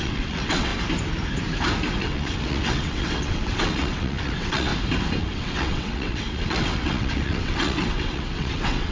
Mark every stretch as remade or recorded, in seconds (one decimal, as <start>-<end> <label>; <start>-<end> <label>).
0.0-0.7 remade; 0.7-2.0 recorded; 2.0-4.7 remade; 4.7-5.2 recorded; 5.2-8.9 remade